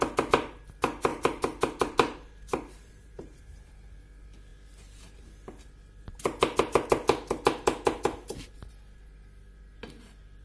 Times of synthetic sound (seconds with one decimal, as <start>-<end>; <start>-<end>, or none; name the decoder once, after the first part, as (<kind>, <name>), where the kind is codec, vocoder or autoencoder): 1.1-3.7 (vocoder, BigVGAN v2)

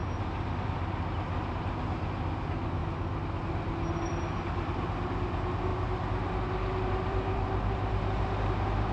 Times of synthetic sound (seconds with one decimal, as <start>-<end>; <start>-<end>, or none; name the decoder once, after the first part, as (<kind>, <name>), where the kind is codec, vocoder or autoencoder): 5.7-8.2 (vocoder, BigVGAN v2)